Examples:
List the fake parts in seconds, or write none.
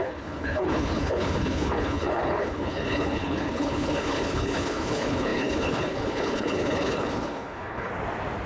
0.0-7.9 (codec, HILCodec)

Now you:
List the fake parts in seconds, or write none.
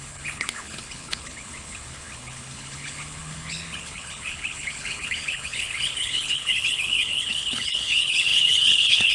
0.0-9.1 (codec, HILCodec)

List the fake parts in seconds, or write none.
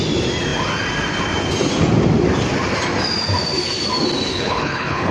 4.3-5.1 (codec, HILCodec)